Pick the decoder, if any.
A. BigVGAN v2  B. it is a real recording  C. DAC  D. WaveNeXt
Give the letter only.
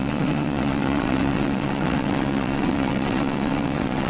D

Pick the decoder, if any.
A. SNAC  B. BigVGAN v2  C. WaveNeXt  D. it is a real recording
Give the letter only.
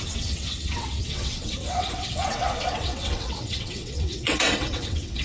C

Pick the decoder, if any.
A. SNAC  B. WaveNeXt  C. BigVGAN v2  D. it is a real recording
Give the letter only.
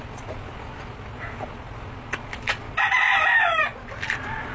D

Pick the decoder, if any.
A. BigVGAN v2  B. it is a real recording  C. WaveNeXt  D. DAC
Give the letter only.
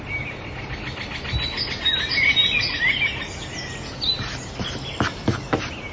B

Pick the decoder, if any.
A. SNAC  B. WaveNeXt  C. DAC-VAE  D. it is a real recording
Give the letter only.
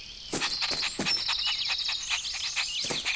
D